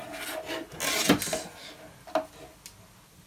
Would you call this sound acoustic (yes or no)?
yes